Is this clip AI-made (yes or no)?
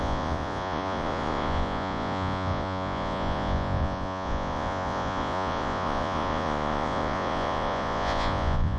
yes